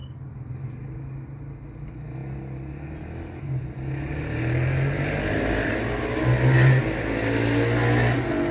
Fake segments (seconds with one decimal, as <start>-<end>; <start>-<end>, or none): none